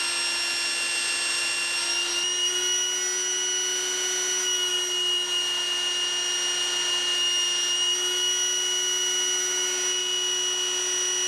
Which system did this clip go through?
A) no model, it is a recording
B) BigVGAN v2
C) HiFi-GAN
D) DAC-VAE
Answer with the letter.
A